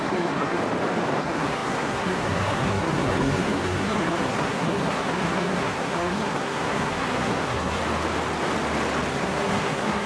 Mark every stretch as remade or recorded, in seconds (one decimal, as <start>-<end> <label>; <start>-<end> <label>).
0.0-0.6 remade; 0.6-1.2 recorded; 1.2-7.8 remade; 7.8-9.1 recorded; 9.1-10.1 remade